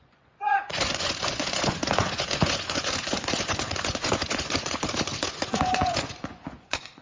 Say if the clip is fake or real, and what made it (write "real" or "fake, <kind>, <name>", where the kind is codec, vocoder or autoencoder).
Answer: fake, vocoder, Vocos